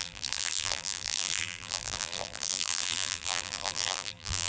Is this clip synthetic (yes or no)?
yes